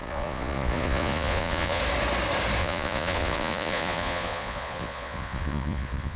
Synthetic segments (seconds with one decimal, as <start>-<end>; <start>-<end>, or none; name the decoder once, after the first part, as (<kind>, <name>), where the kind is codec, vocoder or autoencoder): 0.0-1.8 (vocoder, Vocos); 2.6-6.2